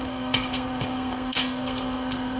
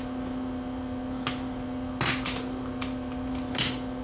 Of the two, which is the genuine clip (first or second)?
second